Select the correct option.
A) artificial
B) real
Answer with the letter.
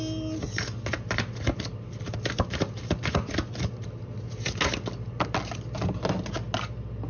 B